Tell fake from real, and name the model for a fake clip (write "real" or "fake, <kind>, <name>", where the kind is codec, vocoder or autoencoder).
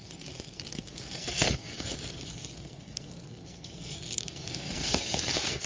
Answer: fake, codec, SNAC